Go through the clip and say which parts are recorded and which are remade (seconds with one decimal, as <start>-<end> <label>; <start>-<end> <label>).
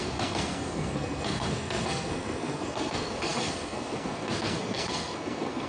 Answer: 0.0-5.7 remade